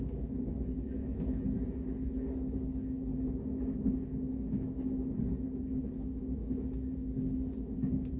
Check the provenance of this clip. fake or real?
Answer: fake